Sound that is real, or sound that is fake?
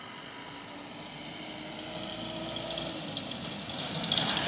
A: real